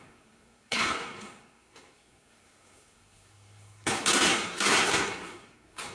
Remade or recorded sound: remade